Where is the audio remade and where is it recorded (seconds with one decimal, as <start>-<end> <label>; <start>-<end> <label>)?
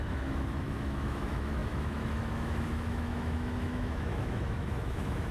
0.0-5.3 remade